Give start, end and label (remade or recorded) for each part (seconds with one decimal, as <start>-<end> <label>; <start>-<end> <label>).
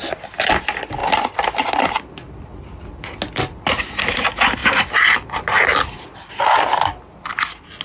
0.0-7.8 recorded